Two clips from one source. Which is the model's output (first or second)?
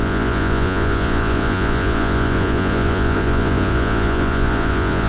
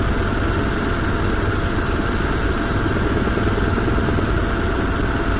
first